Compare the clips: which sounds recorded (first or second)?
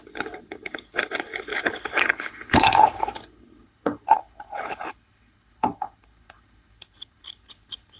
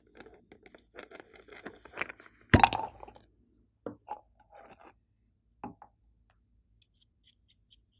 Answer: second